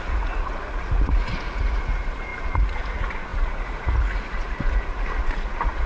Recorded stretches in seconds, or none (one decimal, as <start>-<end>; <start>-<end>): none